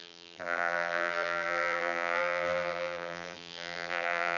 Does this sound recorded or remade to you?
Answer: remade